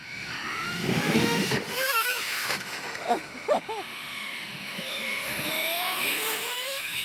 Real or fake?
fake